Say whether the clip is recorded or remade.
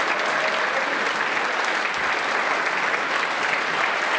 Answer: recorded